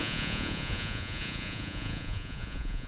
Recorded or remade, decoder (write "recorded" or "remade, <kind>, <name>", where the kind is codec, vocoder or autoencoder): remade, vocoder, Vocos